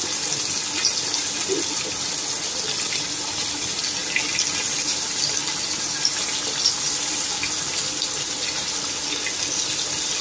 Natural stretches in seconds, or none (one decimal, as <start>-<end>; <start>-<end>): 0.0-10.2